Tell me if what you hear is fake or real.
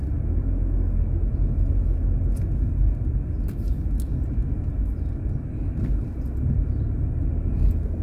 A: real